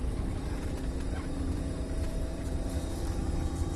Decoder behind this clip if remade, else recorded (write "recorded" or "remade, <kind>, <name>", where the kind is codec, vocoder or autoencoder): remade, vocoder, BigVGAN v2